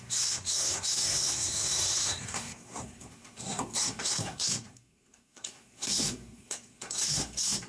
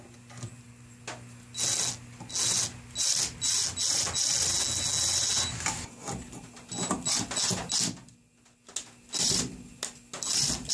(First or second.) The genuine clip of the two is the second